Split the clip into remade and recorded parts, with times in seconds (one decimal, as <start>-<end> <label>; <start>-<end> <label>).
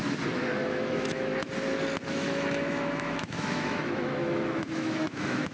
0.0-0.6 recorded; 0.6-1.3 remade; 1.3-2.1 recorded; 2.1-5.5 remade